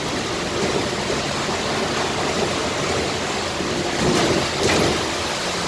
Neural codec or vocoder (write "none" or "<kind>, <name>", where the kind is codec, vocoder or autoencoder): none